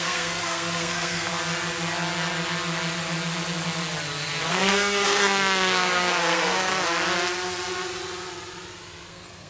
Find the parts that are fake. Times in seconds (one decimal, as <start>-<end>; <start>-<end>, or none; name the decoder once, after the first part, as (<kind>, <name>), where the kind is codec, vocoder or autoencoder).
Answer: 0.0-1.3 (codec, SNAC); 4.5-6.7; 9.1-9.5